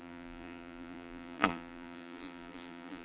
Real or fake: fake